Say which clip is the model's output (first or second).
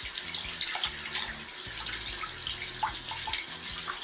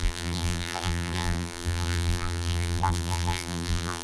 second